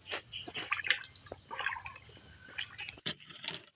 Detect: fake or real real